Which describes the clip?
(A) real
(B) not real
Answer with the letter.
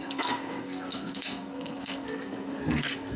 B